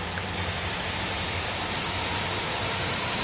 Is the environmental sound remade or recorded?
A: remade